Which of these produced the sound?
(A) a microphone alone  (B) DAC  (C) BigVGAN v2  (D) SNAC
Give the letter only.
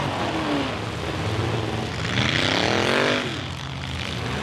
A